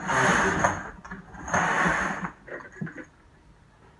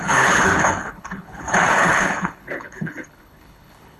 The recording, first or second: first